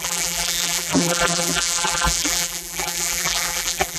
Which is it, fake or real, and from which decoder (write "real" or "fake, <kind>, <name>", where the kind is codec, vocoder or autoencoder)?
fake, vocoder, BigVGAN v2